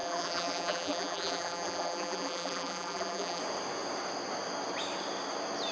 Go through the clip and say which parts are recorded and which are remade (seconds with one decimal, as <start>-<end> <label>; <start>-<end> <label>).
0.0-3.4 remade; 3.4-5.7 recorded